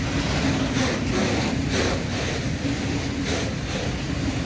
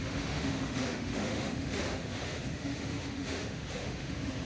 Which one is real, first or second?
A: first